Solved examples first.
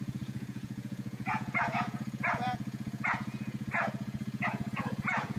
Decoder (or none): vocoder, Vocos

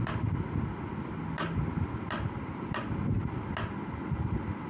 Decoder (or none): none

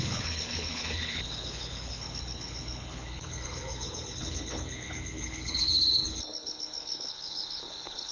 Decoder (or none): codec, HILCodec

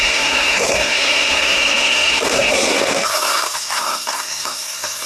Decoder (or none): codec, SNAC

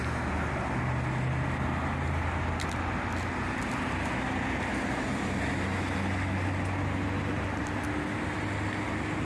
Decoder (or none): none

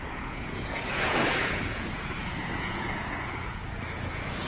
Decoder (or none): vocoder, Vocos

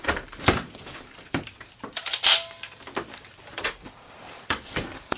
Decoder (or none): vocoder, BigVGAN v2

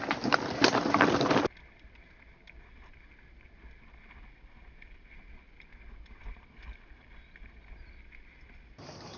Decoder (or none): none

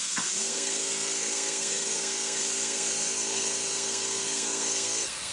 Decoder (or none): codec, SNAC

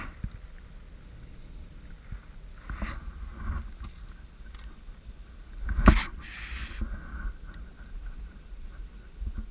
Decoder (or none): none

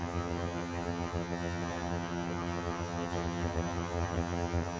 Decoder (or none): vocoder, HiFi-GAN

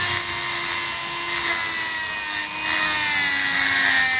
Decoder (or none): none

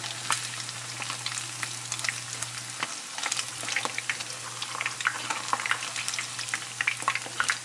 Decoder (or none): none